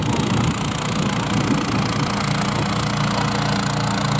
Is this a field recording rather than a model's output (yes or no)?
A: yes